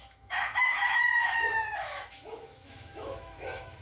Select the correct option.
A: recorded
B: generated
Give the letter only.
B